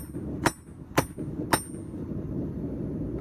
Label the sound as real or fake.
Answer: real